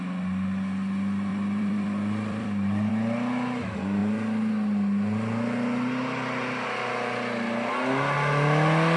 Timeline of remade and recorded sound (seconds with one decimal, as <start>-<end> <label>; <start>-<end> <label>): 0.0-1.3 recorded; 1.3-2.9 remade; 2.9-9.0 recorded